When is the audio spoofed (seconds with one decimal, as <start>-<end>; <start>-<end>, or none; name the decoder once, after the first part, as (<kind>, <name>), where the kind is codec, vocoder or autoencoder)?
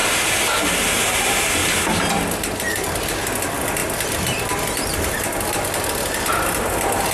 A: 0.0-1.0 (vocoder, BigVGAN v2)